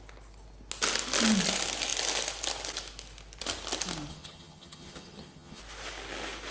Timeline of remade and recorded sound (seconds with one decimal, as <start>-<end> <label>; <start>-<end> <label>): 0.0-4.1 recorded; 4.1-5.6 remade; 5.6-6.5 recorded